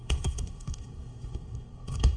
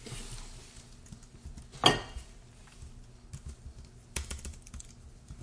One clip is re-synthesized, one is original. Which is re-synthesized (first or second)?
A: first